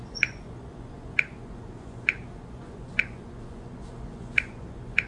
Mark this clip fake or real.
fake